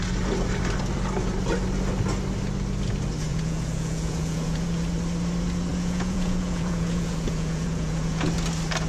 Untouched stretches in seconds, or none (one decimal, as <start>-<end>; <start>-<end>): 0.0-3.3; 4.8-5.7; 8.3-8.9